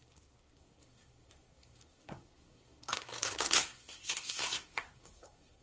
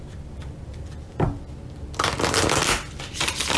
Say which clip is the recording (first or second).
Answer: second